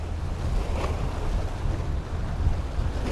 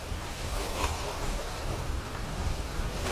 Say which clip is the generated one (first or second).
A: second